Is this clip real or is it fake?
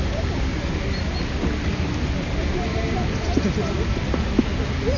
real